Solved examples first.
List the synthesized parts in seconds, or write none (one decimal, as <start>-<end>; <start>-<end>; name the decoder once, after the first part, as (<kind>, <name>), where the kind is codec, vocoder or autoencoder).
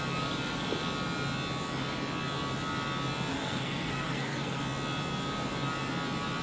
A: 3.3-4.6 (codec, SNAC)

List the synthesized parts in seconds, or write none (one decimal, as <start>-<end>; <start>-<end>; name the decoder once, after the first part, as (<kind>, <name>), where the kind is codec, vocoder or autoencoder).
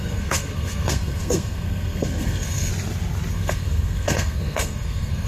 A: 0.0-2.7 (codec, SNAC); 3.3-5.3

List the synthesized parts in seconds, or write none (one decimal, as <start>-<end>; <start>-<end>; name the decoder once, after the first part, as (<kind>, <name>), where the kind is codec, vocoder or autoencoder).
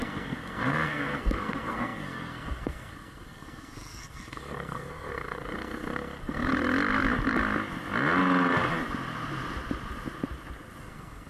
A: 0.0-6.5 (codec, SNAC); 10.8-11.3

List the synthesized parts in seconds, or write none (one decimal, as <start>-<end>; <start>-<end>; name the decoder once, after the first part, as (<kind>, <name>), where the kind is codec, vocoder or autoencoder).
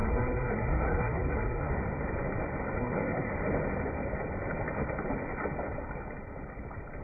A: 0.0-1.7 (codec, SNAC); 2.8-3.3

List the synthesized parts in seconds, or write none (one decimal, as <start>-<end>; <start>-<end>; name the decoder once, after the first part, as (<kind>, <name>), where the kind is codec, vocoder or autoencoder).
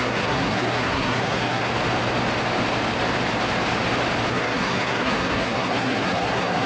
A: 0.0-1.7 (codec, SNAC); 4.3-6.7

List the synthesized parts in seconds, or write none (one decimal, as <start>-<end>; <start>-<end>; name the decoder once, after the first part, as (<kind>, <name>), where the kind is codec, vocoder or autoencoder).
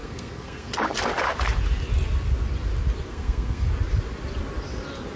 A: 0.0-0.7 (codec, SNAC); 3.1-3.7